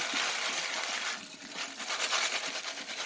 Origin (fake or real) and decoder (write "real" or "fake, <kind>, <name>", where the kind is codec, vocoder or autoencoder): real